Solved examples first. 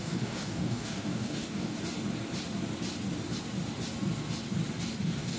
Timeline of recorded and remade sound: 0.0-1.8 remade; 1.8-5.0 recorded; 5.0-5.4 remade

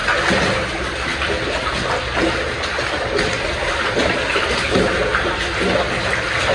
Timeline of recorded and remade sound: 0.0-6.5 recorded

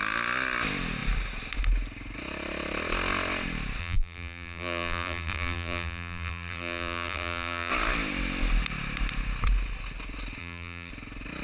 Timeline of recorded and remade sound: 0.0-3.8 recorded; 3.8-7.7 remade; 7.7-10.4 recorded; 10.4-10.9 remade; 10.9-11.4 recorded